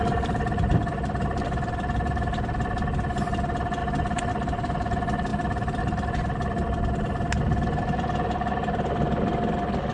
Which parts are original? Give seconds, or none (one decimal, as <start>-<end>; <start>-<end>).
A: 0.0-9.9